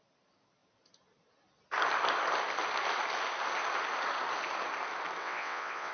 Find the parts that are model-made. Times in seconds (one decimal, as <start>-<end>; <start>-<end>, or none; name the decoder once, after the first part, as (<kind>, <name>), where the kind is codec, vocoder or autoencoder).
5.2-5.9 (vocoder, WaveNeXt)

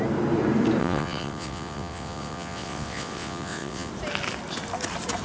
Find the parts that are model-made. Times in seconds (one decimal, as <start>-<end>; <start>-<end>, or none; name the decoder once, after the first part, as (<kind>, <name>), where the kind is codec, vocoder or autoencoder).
0.8-3.9 (vocoder, WaveNeXt)

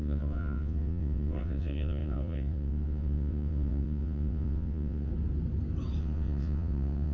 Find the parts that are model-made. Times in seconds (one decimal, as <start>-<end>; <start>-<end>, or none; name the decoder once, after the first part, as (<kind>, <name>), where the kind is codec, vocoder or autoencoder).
0.0-5.1 (vocoder, WaveNeXt); 6.0-7.1

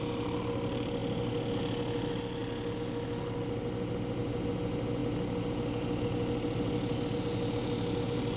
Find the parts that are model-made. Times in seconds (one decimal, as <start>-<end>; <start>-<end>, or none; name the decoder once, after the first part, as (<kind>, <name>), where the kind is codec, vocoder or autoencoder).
none

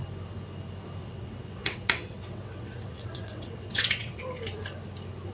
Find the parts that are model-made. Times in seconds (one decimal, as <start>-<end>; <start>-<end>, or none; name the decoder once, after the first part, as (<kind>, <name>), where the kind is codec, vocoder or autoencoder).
1.0-4.2 (vocoder, WaveNeXt)

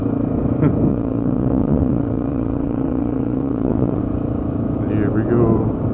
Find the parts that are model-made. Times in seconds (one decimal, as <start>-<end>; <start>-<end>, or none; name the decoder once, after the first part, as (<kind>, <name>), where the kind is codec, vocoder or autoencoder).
0.9-4.0 (vocoder, WaveNeXt)

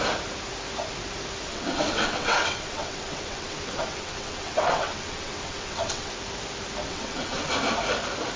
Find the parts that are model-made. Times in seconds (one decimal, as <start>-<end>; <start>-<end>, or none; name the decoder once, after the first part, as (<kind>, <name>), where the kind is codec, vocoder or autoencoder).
1.5-6.1 (vocoder, WaveNeXt); 6.9-7.5